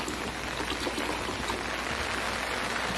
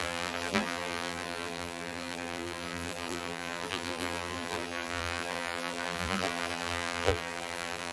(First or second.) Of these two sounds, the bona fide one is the first